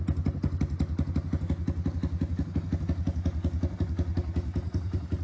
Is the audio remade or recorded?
recorded